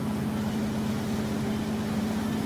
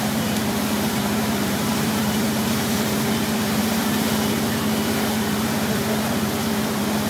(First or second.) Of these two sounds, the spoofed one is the second